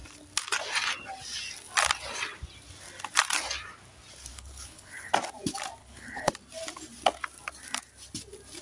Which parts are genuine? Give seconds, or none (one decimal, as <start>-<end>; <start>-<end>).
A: 0.0-4.3; 5.1-5.8; 6.3-8.6